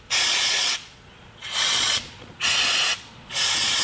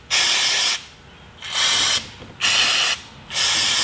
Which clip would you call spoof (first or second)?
first